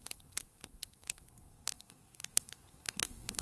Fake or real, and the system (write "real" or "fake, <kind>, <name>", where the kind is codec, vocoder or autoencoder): fake, codec, SNAC